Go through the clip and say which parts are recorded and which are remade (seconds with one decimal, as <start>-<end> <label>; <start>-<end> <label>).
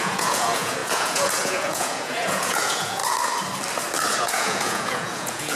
0.0-3.0 remade; 3.0-4.2 recorded; 4.2-5.6 remade